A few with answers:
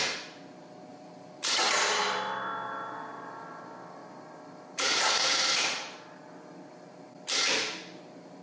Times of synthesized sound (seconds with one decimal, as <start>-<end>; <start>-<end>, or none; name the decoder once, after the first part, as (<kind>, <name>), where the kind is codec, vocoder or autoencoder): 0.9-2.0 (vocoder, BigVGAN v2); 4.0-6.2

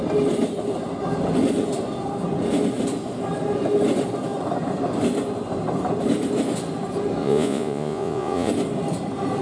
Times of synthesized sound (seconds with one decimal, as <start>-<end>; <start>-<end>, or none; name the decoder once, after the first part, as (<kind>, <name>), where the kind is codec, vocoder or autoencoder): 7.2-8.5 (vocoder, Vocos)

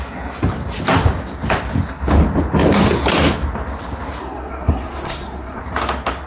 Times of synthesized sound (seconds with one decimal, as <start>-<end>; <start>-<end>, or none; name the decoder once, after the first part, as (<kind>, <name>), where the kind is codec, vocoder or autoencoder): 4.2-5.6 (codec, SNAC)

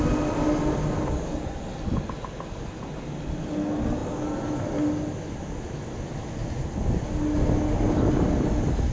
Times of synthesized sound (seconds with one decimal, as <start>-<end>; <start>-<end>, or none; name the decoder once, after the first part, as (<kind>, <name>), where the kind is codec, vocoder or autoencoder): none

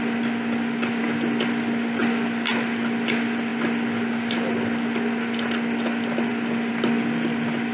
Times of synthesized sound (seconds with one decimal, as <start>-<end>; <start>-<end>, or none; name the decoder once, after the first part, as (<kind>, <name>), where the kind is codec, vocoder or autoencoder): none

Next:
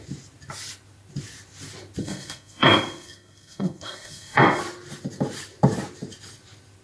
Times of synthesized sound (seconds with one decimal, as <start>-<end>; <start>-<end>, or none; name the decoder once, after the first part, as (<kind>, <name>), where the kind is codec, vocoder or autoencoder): 2.0-4.6 (codec, SNAC)

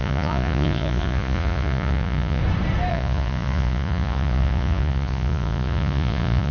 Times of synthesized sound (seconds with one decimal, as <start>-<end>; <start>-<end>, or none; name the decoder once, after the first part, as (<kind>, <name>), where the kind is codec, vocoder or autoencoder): 0.0-2.4 (vocoder, Vocos); 2.9-6.5

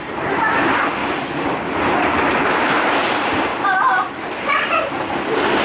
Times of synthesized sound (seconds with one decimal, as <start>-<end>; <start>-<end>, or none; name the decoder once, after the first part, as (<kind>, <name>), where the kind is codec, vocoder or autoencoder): 0.0-1.0 (vocoder, BigVGAN v2); 1.8-3.5